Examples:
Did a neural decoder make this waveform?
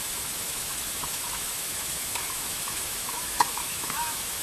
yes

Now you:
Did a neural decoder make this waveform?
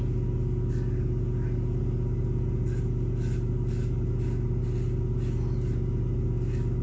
no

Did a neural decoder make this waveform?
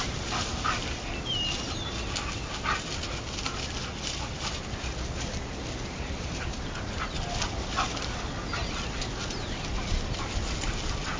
no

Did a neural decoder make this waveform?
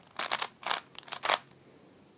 no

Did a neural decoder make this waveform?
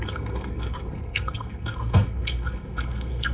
yes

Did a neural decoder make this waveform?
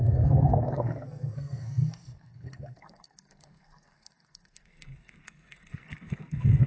yes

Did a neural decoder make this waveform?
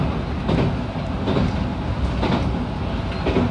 no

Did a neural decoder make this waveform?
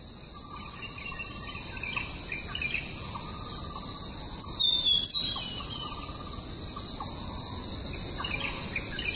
no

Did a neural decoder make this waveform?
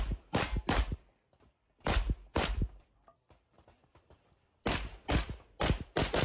yes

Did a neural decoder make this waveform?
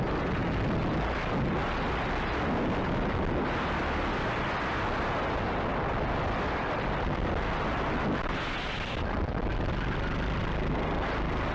no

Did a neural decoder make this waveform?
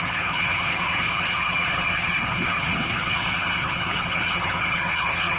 yes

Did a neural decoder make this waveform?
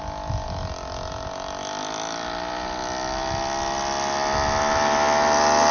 no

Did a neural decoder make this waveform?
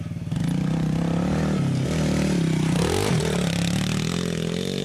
no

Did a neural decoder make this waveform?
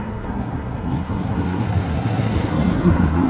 yes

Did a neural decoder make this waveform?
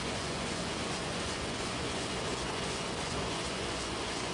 yes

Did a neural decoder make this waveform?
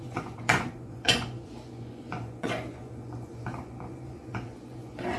yes